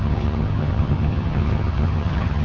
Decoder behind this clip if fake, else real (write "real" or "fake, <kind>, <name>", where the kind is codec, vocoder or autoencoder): fake, vocoder, HiFi-GAN